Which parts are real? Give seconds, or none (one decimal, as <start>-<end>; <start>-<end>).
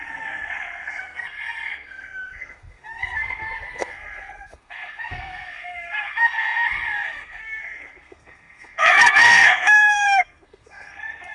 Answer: none